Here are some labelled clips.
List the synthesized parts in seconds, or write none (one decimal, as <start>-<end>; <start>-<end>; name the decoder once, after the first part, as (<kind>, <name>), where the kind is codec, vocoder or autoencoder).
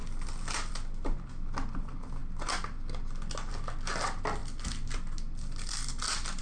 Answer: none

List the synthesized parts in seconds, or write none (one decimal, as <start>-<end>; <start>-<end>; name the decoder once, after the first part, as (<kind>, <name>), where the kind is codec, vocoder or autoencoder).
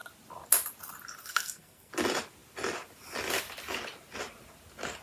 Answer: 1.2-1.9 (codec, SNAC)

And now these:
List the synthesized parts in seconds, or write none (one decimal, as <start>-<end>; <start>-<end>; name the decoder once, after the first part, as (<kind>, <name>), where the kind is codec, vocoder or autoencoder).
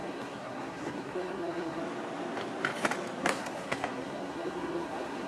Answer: 0.0-1.8 (codec, SNAC); 3.2-5.3